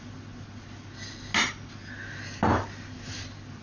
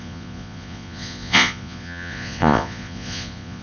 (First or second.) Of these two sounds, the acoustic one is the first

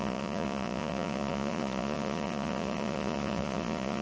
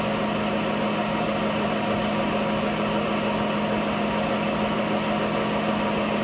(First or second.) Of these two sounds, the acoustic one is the second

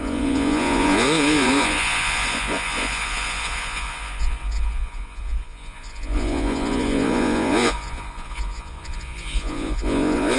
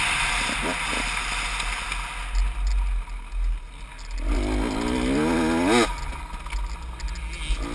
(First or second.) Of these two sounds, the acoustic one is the second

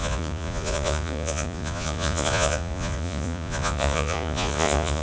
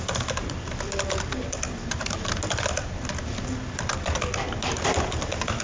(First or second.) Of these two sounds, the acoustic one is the second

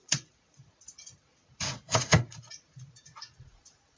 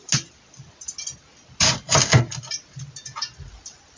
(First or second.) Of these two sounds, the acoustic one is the second